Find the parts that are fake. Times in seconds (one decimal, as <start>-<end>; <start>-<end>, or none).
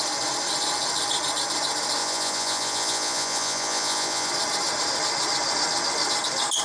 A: 2.0-4.3